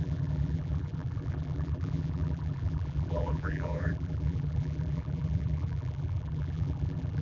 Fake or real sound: fake